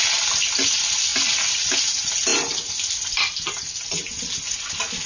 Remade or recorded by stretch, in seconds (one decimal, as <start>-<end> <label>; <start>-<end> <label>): 0.0-5.1 recorded